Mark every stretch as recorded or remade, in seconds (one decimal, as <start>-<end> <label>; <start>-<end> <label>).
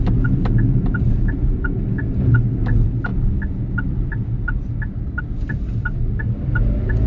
0.0-7.1 recorded